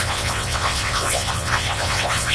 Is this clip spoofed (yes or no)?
yes